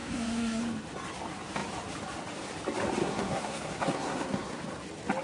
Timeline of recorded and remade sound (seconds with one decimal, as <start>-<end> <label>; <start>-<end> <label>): 0.0-0.6 remade; 0.6-3.0 recorded; 3.0-4.6 remade; 4.6-5.2 recorded